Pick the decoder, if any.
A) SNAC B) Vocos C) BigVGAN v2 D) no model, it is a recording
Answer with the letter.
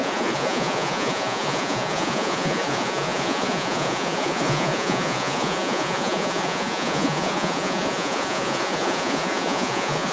B